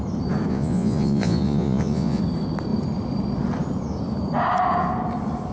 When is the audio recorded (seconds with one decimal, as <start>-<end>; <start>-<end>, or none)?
0.0-0.5; 2.2-5.5